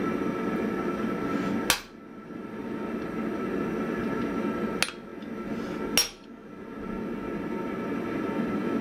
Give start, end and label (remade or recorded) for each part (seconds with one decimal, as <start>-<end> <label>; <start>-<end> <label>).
0.0-8.8 recorded